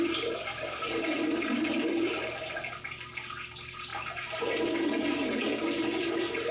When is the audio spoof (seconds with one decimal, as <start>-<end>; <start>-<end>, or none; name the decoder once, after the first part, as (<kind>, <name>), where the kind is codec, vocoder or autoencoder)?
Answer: 3.9-4.6 (vocoder, BigVGAN v2)

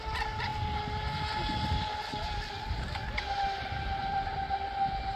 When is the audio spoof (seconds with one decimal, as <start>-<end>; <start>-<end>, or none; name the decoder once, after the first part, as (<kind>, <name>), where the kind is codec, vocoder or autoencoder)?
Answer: 4.0-4.7 (vocoder, BigVGAN v2)

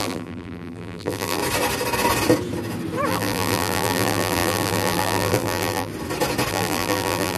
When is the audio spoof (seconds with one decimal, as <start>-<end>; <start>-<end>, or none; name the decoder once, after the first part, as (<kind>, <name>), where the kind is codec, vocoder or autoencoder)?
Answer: 0.0-1.4 (vocoder, BigVGAN v2); 3.1-5.9; 6.5-7.4